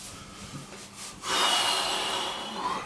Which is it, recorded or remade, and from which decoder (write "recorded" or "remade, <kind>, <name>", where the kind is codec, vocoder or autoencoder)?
recorded